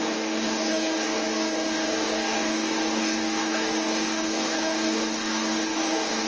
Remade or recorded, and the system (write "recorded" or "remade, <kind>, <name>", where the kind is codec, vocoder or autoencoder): remade, codec, DAC